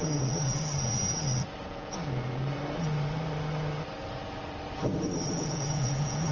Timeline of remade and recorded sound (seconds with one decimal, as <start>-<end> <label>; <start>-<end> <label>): 0.0-1.6 recorded; 1.6-2.0 remade; 2.0-5.3 recorded; 5.3-6.3 remade